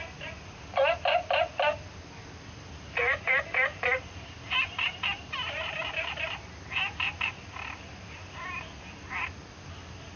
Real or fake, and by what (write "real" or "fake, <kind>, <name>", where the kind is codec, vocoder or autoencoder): real